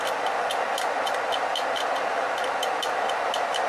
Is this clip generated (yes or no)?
no